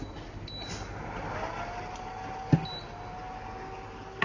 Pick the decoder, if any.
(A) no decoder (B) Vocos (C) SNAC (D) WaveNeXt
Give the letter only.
A